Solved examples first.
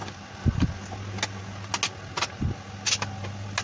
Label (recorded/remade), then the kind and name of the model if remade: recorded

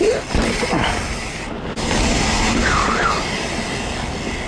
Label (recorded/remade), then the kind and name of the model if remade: recorded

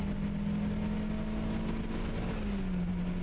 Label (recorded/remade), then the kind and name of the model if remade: recorded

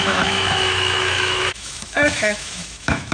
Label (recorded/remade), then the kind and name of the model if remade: remade, autoencoder, DAC-VAE